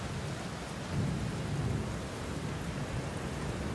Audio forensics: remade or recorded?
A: recorded